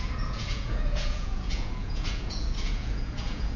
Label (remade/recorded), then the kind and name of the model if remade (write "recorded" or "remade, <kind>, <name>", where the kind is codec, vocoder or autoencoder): remade, vocoder, Vocos